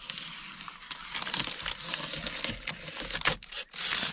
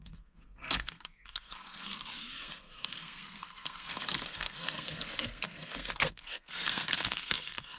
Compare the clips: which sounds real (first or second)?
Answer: first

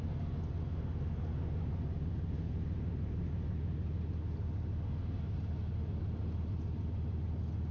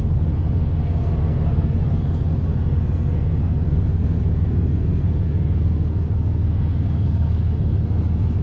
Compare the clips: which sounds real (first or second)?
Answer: first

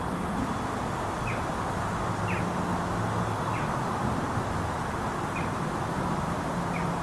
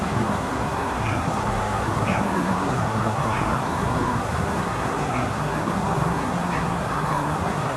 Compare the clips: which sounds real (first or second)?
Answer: first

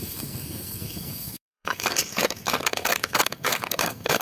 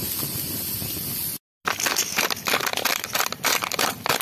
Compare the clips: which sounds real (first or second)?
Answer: second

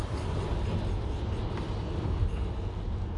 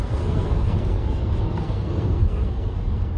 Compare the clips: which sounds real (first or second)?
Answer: first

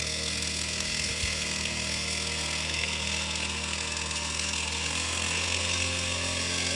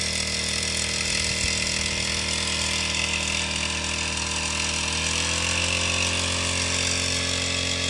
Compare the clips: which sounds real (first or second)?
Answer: second